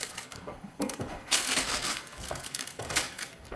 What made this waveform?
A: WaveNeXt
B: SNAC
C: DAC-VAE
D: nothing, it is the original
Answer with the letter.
B